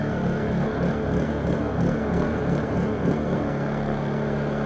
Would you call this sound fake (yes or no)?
yes